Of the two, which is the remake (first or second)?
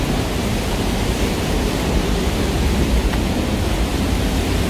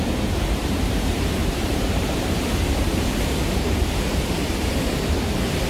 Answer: second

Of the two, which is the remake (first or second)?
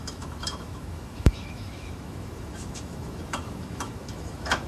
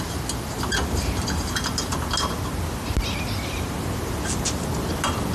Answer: first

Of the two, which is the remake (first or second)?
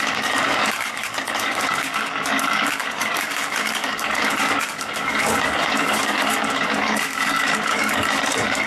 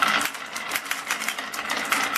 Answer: first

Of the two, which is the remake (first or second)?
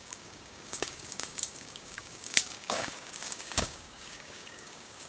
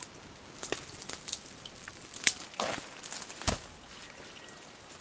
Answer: first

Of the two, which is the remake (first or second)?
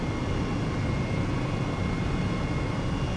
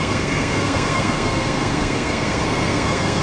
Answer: second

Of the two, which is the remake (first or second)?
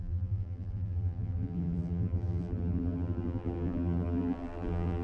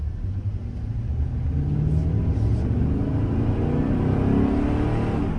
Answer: first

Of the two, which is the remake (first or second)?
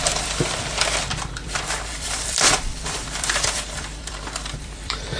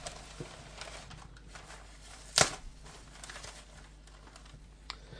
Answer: first